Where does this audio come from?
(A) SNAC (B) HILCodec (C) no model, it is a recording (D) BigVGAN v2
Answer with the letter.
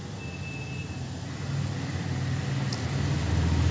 C